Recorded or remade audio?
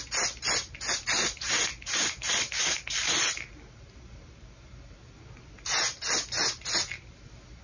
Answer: recorded